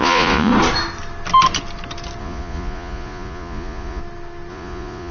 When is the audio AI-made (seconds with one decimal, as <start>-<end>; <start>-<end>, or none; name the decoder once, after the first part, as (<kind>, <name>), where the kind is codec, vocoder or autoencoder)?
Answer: 0.0-0.5 (vocoder, Vocos); 2.2-4.0; 4.5-5.1